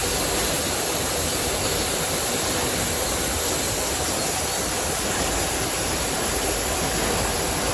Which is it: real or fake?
real